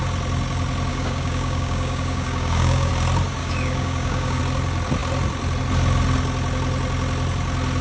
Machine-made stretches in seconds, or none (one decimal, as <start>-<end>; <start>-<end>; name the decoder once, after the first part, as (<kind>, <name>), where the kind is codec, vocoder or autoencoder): 0.9-2.9 (codec, DAC); 3.4-4.4